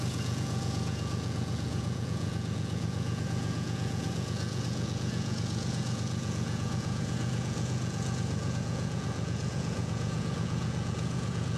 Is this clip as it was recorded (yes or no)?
no